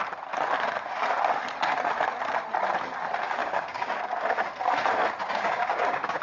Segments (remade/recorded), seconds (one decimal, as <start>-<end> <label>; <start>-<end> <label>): 0.0-3.4 recorded; 3.4-4.0 remade; 4.0-5.2 recorded; 5.2-6.2 remade